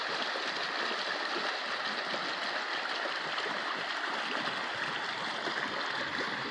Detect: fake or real real